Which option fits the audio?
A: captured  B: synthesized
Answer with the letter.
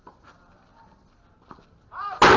A